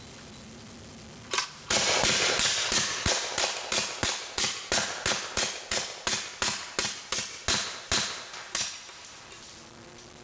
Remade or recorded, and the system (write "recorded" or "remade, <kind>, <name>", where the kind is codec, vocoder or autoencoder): recorded